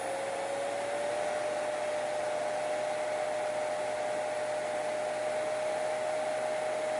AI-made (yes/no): no